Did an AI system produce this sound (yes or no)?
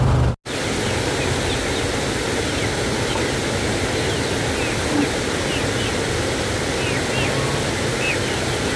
no